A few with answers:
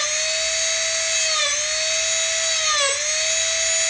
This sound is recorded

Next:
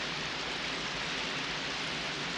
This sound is recorded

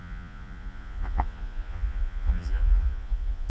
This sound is remade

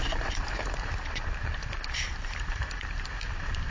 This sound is remade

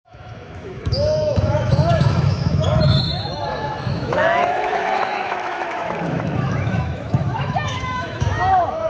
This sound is remade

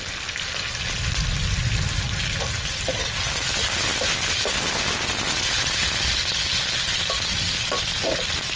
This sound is recorded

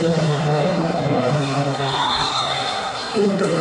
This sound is remade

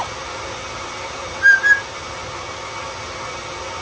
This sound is recorded